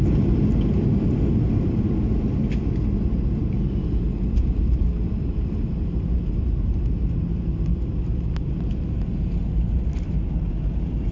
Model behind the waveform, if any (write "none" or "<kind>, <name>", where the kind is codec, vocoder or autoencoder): none